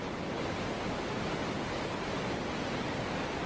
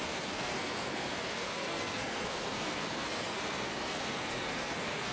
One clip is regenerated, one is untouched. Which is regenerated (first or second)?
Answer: second